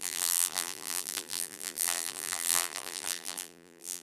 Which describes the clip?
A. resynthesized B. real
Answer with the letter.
A